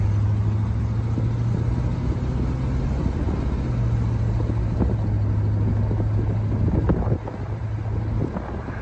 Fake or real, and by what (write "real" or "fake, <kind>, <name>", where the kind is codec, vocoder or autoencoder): real